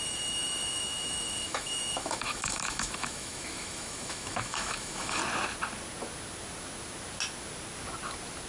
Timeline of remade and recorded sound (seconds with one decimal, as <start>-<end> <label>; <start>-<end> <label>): 0.0-5.2 remade; 5.2-8.5 recorded